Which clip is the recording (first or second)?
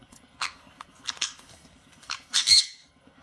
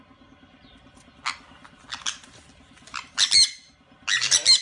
second